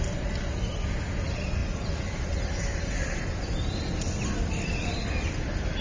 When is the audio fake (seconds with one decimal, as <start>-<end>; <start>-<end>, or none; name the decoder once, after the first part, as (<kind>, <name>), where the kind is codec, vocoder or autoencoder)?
1.6-5.1 (vocoder, BigVGAN v2)